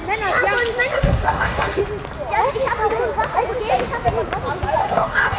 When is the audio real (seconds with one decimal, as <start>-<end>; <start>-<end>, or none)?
0.0-0.9; 1.8-4.8